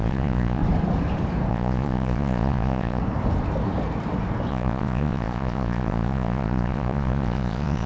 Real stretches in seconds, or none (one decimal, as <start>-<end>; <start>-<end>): 0.6-1.5; 3.0-4.5